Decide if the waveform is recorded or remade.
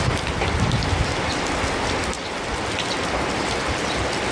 recorded